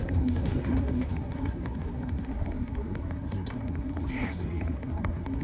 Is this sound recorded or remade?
remade